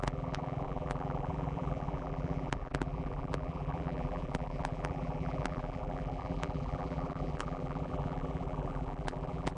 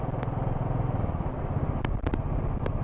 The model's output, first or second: first